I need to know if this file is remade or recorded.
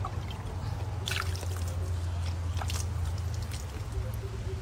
recorded